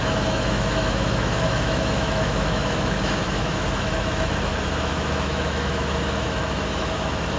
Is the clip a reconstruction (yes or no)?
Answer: yes